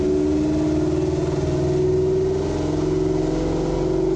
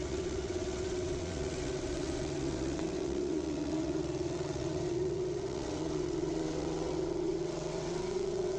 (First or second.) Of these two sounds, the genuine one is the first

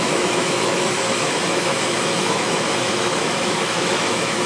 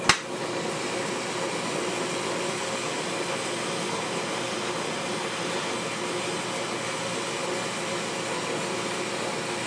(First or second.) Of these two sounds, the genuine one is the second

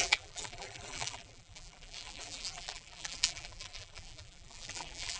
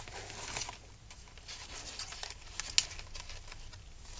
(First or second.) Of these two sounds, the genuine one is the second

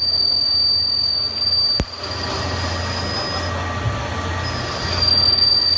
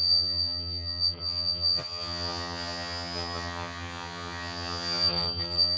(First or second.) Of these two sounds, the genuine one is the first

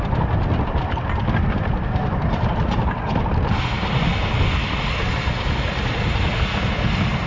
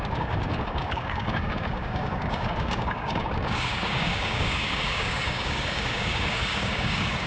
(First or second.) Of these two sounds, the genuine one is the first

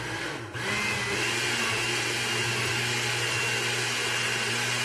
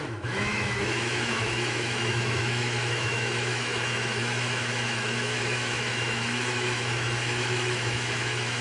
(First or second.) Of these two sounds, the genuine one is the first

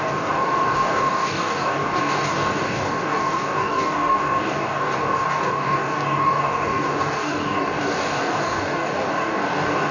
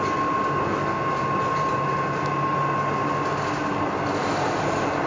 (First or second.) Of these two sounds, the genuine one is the second